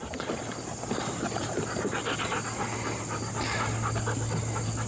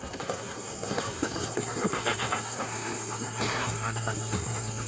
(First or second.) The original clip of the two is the first